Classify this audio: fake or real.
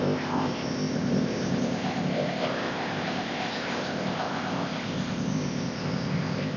fake